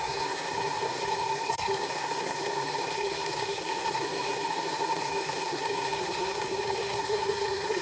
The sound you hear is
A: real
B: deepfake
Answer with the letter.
B